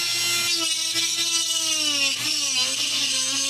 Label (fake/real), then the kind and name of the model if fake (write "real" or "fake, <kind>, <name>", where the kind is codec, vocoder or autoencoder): real